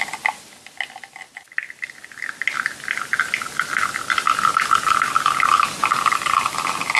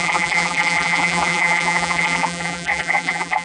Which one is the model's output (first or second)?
second